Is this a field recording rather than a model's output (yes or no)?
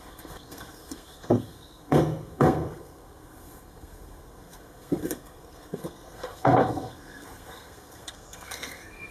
no